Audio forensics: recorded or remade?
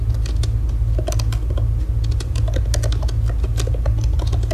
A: recorded